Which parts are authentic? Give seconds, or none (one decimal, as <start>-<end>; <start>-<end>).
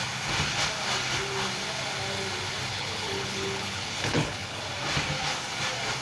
0.0-2.7; 4.6-6.0